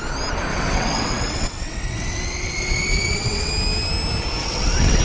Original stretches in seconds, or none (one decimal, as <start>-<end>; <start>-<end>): 0.0-0.5; 3.5-4.4